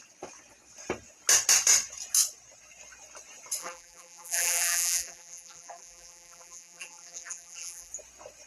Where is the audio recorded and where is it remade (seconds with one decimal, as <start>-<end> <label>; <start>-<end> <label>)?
0.0-3.6 recorded; 3.6-7.9 remade; 7.9-8.5 recorded